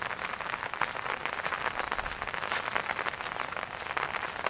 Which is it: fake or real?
real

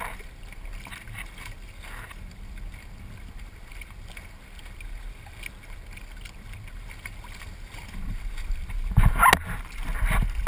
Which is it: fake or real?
real